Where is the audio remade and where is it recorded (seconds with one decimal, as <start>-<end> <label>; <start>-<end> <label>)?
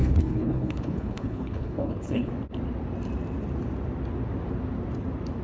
0.0-2.3 remade; 2.3-5.4 recorded